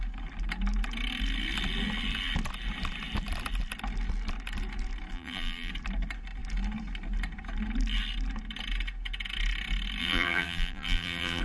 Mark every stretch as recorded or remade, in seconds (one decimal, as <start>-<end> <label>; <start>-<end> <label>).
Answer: 0.0-5.1 recorded; 5.1-5.7 remade; 5.7-10.0 recorded; 10.0-11.4 remade